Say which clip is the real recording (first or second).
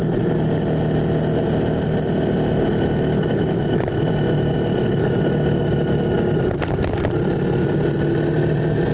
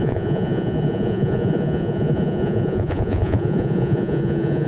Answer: first